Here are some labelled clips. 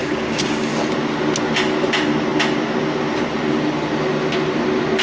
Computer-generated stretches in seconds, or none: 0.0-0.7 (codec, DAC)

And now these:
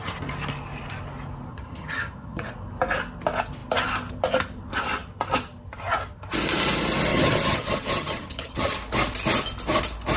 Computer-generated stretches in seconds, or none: 1.5-2.4 (vocoder, HiFi-GAN); 7.1-8.8

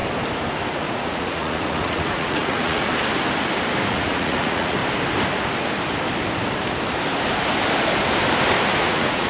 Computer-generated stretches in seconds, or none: 0.7-2.9 (vocoder, Vocos); 3.9-4.8; 8.8-9.3

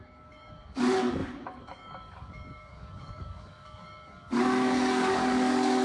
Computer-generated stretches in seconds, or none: 0.0-5.8 (codec, DAC)